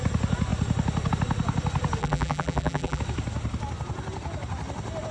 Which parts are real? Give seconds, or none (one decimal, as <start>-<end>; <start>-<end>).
0.0-2.0; 3.0-5.1